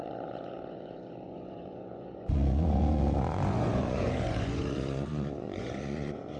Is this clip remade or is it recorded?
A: remade